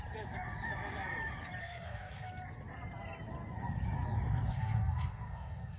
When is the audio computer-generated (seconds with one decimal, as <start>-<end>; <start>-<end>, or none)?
1.6-2.3; 4.5-5.8